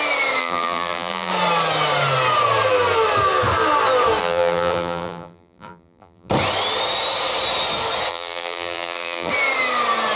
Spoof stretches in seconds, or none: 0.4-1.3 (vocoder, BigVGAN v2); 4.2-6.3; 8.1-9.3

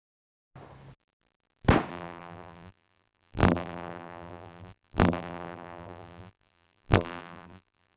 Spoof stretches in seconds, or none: 0.0-0.5 (vocoder, BigVGAN v2); 1.9-8.0

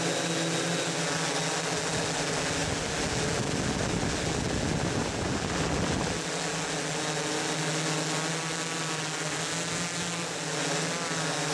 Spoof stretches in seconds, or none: none

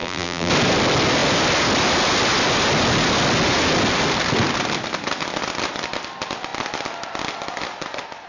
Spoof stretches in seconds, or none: 0.0-0.5 (vocoder, BigVGAN v2)

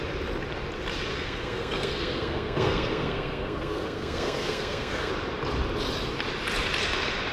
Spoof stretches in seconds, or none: 1.1-5.1 (codec, SNAC)

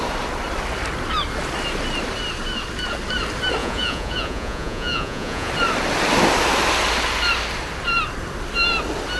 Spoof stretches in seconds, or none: 3.6-5.5 (vocoder, Vocos)

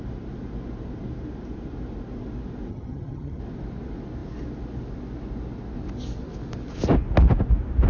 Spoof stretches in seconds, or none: 2.7-3.4 (vocoder, HiFi-GAN)